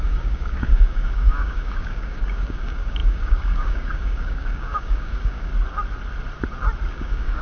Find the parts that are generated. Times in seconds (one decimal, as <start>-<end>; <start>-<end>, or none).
0.0-5.5; 6.9-7.4